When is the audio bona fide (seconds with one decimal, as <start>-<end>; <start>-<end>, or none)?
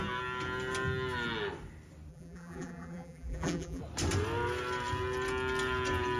0.0-2.1; 3.8-6.2